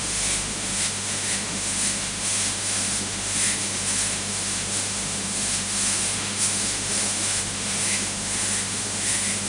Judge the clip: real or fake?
fake